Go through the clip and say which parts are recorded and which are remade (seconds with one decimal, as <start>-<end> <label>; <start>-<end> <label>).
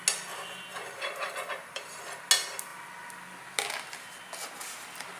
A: 0.0-0.7 recorded; 0.7-2.0 remade; 2.0-5.2 recorded